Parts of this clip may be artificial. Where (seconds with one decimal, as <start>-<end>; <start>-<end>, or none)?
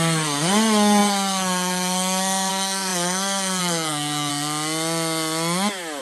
0.0-4.3